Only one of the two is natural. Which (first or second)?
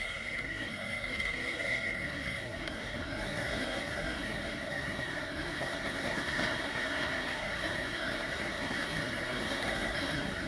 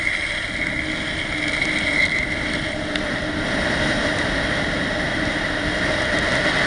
second